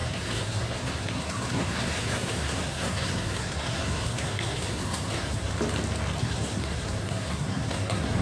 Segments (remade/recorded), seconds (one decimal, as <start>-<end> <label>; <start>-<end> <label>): 0.0-5.5 remade; 5.5-6.2 recorded; 6.2-8.2 remade